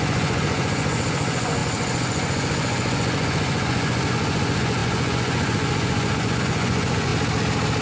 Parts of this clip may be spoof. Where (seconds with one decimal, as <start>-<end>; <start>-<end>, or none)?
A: 0.0-7.1